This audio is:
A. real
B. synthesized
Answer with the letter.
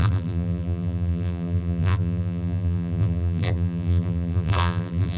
B